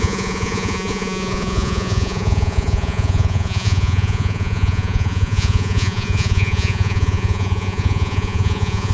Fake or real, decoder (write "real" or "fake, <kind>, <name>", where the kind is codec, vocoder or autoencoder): fake, vocoder, Vocos